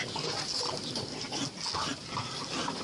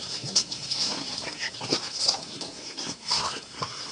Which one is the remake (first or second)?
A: second